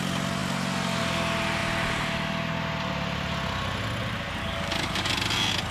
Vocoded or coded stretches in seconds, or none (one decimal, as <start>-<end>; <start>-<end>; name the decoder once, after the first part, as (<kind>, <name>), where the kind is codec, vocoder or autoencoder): 4.4-5.1 (codec, DAC)